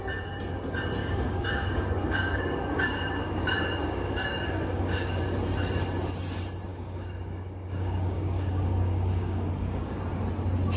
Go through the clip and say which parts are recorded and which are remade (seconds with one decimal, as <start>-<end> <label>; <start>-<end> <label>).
0.0-1.0 recorded; 1.0-5.2 remade; 5.2-6.7 recorded; 6.7-10.0 remade; 10.0-10.8 recorded